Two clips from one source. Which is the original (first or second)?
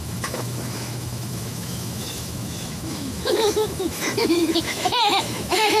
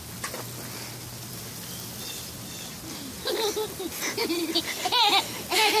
second